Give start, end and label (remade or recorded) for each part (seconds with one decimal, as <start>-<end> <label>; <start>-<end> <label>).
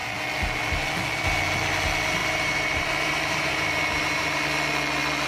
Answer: 0.0-2.2 recorded; 2.2-4.4 remade; 4.4-5.3 recorded